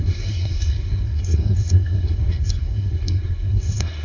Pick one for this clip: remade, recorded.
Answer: remade